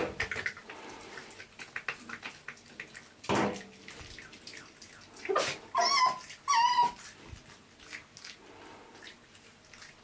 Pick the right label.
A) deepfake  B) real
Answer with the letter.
B